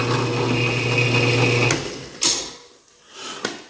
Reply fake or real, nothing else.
real